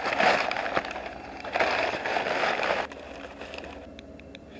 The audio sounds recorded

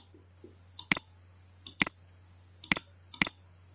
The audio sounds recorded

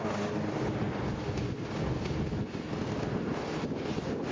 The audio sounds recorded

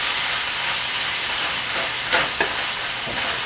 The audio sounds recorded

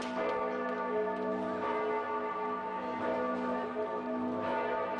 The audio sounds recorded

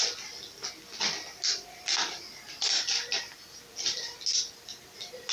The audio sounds recorded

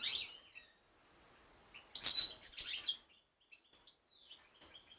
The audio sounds recorded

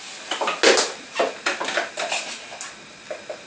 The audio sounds recorded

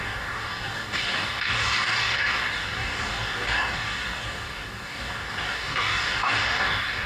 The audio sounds remade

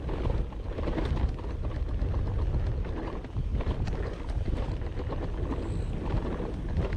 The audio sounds recorded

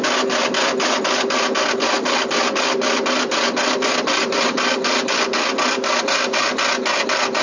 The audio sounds recorded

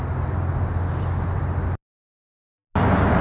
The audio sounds recorded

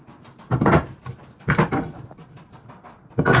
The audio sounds recorded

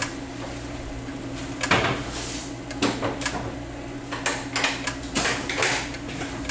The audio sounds recorded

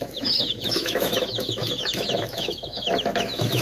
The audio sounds remade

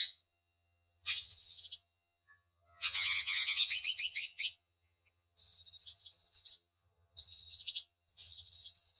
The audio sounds remade